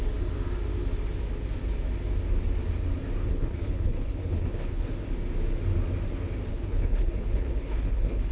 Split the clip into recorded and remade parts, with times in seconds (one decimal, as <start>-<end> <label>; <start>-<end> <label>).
0.0-3.3 recorded; 3.3-4.9 remade; 4.9-6.5 recorded; 6.5-8.3 remade